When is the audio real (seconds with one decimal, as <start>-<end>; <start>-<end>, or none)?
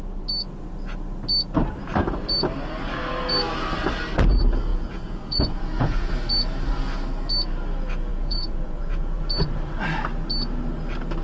0.0-4.7; 6.1-8.1; 9.2-11.2